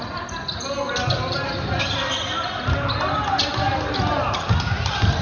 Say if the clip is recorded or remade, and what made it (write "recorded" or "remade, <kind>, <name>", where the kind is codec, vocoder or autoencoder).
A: recorded